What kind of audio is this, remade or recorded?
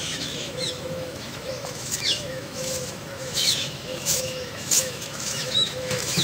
remade